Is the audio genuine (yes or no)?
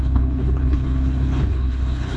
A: no